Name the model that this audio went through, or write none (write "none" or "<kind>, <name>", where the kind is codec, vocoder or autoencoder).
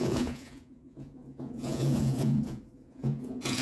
vocoder, Vocos